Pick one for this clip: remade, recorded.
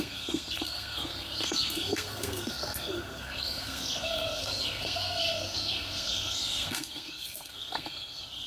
remade